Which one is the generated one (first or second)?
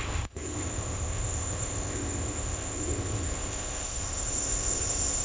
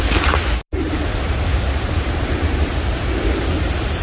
first